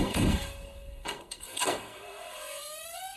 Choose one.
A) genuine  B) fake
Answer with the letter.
B